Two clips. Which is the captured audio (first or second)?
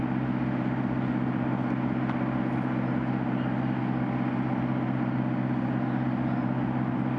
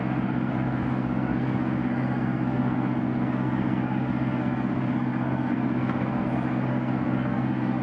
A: first